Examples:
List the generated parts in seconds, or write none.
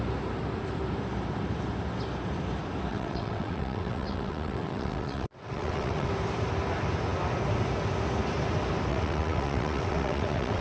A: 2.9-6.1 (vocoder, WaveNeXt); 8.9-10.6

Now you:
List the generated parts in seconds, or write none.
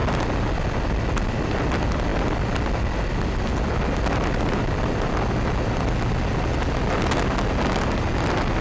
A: none